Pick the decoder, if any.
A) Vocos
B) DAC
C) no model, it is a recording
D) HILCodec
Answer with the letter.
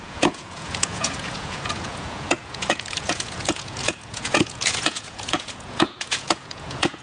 A